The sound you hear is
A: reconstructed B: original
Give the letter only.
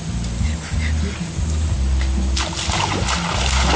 B